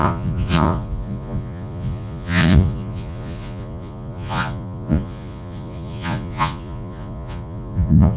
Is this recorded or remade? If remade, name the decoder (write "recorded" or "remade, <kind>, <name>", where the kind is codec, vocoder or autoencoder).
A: remade, vocoder, Vocos